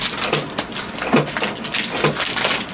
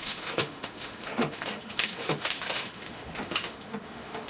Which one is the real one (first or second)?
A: first